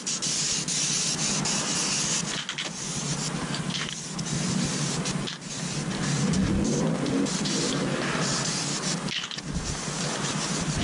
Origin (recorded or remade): recorded